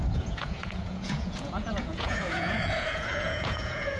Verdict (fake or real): fake